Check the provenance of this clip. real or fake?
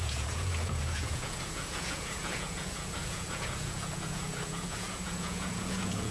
fake